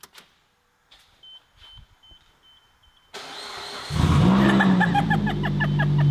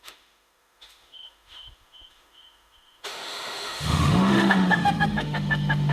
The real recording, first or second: first